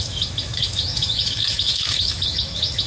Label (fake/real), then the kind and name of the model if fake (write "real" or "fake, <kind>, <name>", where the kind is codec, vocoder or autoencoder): fake, autoencoder, DAC-VAE